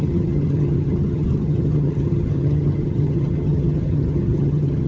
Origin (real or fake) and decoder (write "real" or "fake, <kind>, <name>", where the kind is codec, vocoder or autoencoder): fake, vocoder, HiFi-GAN